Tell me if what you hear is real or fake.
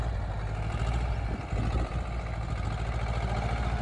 real